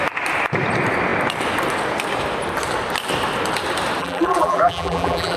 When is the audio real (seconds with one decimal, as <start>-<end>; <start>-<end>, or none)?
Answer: 0.0-4.0